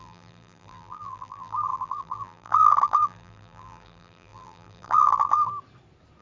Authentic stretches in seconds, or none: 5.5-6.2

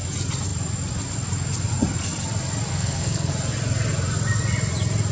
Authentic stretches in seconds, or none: 0.0-2.7; 3.3-5.1

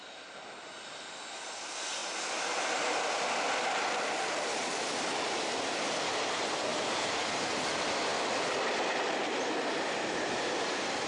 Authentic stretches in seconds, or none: 6.7-7.4; 8.1-10.2

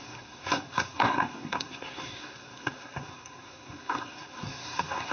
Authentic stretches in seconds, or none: none

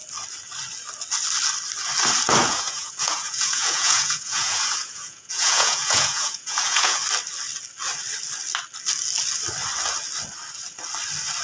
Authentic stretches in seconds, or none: 0.0-2.4; 7.0-11.4

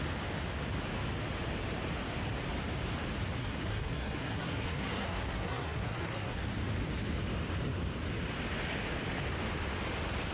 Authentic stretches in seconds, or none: 0.0-3.4; 6.4-10.3

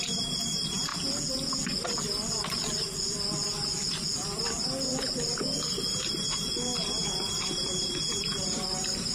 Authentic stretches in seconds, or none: 0.9-5.6

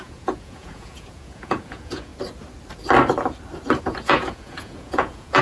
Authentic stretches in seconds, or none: 2.1-3.8